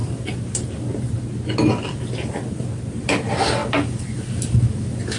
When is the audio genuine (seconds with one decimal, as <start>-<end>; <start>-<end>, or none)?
0.0-5.2